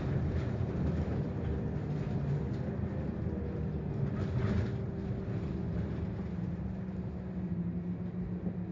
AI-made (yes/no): no